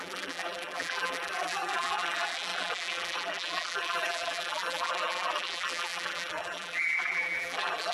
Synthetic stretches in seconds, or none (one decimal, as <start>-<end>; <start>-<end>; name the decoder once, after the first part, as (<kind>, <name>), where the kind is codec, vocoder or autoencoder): 0.0-7.9 (vocoder, BigVGAN v2)